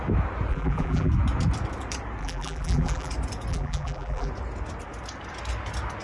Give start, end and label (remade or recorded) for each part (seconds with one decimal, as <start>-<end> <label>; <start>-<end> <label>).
0.0-0.5 recorded; 0.5-1.1 remade; 1.1-2.2 recorded; 2.2-3.1 remade; 3.1-3.5 recorded; 3.5-4.3 remade; 4.3-6.0 recorded